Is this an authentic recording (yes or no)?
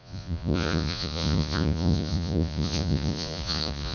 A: no